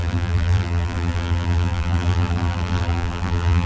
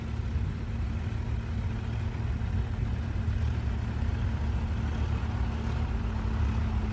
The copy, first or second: first